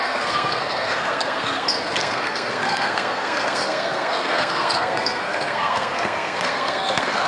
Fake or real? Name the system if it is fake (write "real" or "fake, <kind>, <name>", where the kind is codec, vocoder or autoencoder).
fake, codec, SNAC